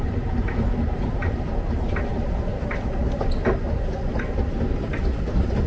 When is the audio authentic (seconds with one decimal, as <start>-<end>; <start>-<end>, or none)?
0.0-5.7